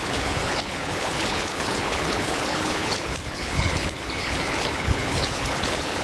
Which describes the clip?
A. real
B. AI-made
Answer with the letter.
B